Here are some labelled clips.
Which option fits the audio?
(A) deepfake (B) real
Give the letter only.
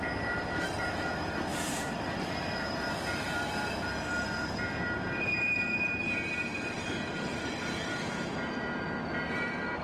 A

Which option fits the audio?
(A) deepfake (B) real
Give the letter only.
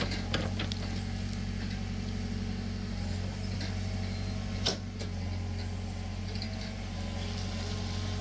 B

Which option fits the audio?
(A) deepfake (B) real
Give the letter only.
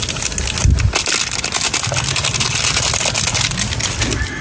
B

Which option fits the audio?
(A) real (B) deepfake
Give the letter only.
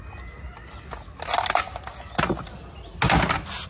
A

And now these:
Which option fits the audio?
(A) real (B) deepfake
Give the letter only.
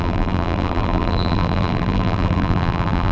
B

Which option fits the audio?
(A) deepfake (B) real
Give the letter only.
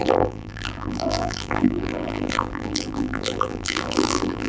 A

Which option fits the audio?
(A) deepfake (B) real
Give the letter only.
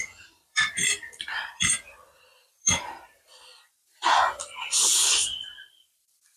A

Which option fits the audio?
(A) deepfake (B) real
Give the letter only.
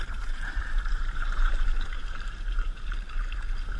A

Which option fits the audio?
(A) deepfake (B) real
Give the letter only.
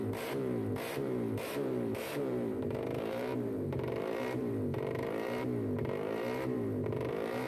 A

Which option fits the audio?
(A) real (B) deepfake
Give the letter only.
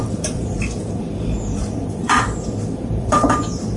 B